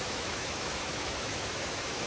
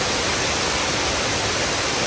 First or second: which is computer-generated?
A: first